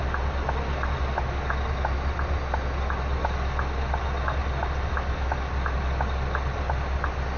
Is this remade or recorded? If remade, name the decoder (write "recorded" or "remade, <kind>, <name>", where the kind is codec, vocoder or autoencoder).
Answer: recorded